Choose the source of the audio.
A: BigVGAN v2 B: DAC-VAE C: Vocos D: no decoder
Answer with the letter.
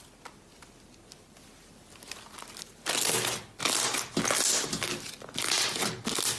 D